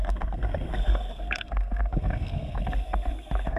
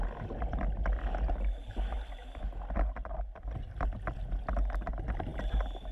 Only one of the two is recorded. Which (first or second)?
second